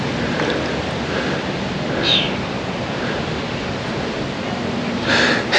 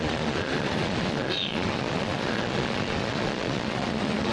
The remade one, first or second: second